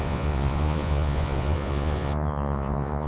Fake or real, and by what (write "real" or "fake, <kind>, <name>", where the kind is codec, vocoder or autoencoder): fake, vocoder, Vocos